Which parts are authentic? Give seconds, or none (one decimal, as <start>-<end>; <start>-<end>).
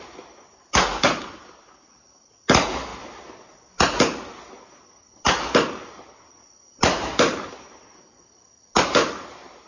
0.0-9.7